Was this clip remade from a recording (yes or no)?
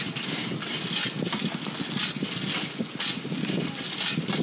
no